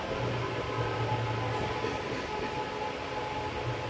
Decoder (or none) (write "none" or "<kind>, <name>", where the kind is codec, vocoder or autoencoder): none